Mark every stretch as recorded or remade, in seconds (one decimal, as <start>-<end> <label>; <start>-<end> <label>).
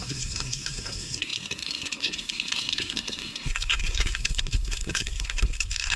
0.0-6.0 remade